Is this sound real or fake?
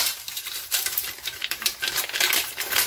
fake